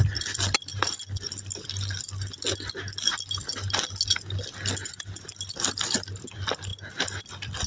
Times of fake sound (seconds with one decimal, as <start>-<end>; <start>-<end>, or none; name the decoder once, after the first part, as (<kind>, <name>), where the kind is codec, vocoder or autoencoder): 0.0-0.7 (vocoder, BigVGAN v2); 5.3-6.7; 7.2-7.7